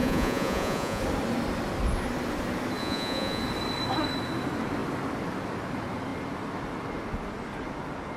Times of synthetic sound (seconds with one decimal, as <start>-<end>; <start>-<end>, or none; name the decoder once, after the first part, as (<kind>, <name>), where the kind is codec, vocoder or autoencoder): 0.0-1.0 (vocoder, Vocos); 2.8-3.4